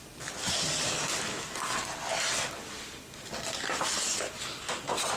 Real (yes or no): yes